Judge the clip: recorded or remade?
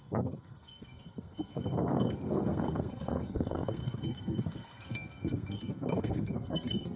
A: remade